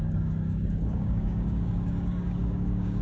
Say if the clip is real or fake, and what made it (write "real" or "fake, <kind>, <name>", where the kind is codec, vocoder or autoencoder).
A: fake, codec, DAC